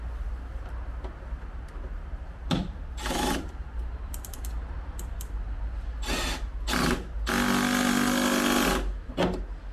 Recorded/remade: recorded